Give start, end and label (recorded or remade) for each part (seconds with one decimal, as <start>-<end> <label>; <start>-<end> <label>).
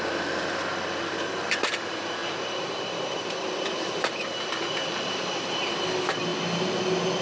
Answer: 0.0-2.2 recorded; 2.2-5.7 remade; 5.7-7.2 recorded